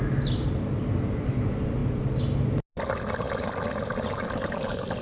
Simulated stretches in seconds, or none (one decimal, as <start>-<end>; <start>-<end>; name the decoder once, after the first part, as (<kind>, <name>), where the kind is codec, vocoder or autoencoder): none